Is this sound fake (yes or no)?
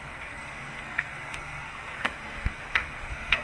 yes